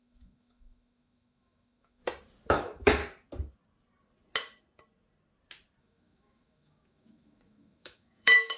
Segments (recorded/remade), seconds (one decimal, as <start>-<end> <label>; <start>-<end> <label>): 0.0-2.0 remade; 2.0-2.5 recorded; 2.5-3.0 remade; 3.0-5.8 recorded; 5.8-8.6 remade